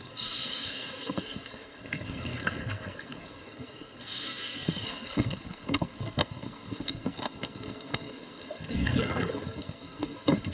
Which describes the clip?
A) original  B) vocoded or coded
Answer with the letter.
B